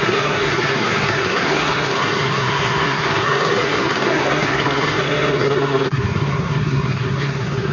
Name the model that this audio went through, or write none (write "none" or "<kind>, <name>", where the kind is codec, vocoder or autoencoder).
codec, SNAC